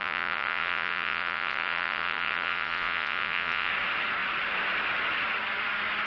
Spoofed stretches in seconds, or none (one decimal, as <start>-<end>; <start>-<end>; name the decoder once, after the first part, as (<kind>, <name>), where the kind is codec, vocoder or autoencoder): 0.0-3.7 (vocoder, Vocos)